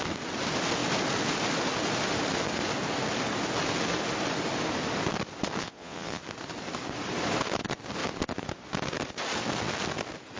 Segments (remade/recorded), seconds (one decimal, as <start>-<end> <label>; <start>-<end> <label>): 0.0-5.6 recorded; 5.6-6.2 remade; 6.2-10.4 recorded